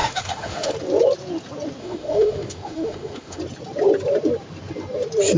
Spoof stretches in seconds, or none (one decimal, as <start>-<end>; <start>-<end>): 0.0-0.7; 1.8-3.4